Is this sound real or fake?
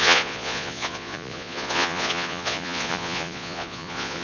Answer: fake